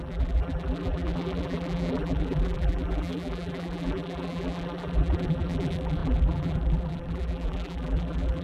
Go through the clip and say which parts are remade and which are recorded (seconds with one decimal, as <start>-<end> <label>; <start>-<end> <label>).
0.0-8.4 remade